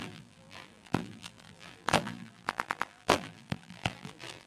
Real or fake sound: fake